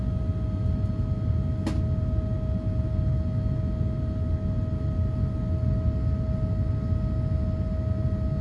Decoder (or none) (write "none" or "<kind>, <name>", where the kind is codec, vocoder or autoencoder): none